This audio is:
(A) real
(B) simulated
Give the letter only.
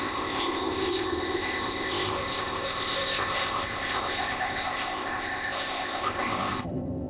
B